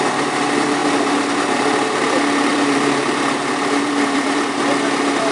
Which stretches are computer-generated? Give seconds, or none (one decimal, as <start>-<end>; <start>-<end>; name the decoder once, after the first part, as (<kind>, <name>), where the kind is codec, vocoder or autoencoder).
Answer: 0.8-2.1 (vocoder, BigVGAN v2); 2.5-4.6